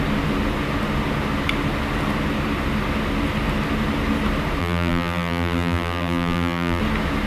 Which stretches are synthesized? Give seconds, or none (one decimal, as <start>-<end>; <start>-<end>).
4.6-6.8